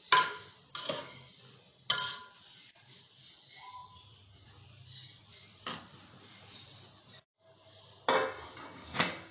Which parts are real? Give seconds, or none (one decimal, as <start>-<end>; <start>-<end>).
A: 0.0-9.3

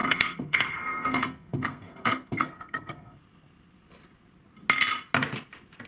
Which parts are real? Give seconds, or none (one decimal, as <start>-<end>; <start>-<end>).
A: 3.2-5.9

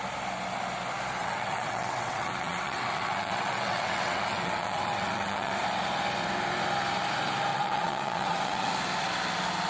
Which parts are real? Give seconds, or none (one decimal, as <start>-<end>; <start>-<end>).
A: 0.0-1.2; 5.6-7.5; 8.7-9.7